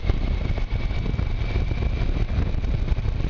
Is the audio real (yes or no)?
yes